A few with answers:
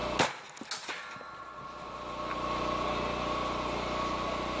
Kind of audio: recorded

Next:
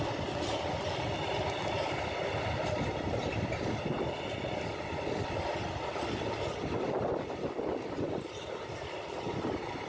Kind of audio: recorded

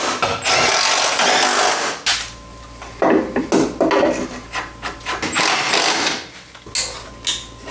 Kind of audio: recorded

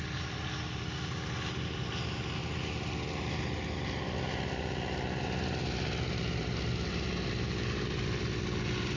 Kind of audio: recorded